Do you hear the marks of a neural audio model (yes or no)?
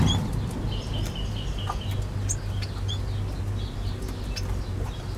no